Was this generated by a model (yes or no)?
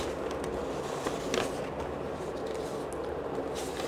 no